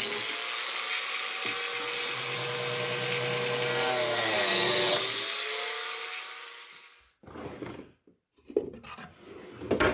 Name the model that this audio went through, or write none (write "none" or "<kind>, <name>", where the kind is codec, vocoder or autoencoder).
none